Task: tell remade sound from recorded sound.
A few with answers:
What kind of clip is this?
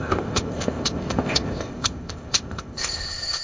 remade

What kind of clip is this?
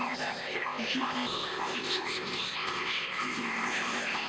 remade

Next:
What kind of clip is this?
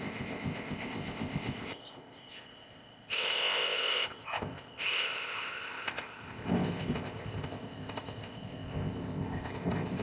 remade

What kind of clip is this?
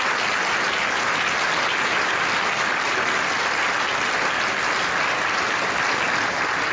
recorded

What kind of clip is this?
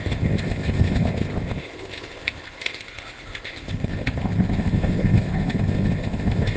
remade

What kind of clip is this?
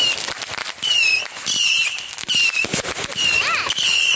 recorded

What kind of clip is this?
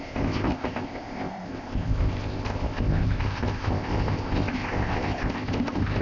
remade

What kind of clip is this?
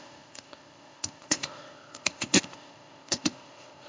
remade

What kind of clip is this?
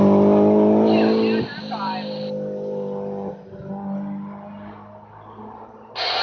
recorded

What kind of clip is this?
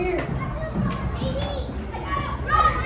recorded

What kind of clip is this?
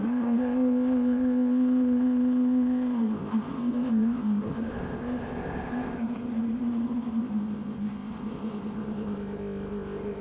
remade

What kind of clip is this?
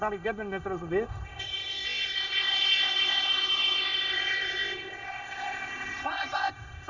remade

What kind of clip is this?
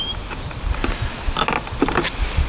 recorded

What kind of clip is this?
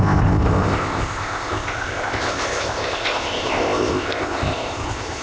remade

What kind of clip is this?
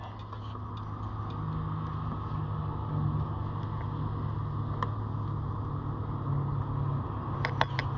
recorded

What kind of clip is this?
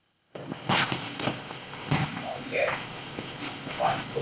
remade